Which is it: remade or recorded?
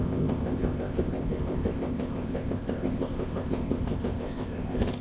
remade